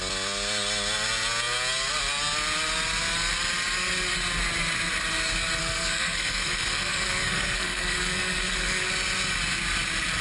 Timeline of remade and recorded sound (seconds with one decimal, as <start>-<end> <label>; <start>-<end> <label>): 0.0-5.6 recorded; 5.6-8.9 remade; 8.9-10.2 recorded